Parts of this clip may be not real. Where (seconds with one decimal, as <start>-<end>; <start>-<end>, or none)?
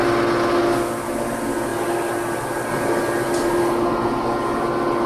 none